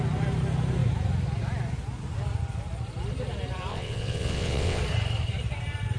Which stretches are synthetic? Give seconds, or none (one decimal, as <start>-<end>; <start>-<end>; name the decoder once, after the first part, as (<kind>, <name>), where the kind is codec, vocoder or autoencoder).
3.7-4.8 (vocoder, WaveNeXt)